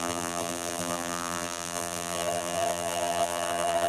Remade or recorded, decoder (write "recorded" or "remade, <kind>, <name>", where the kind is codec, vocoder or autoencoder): remade, vocoder, BigVGAN v2